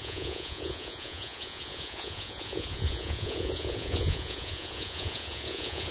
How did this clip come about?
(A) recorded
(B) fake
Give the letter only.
B